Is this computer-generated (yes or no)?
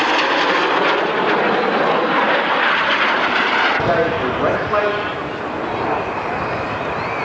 no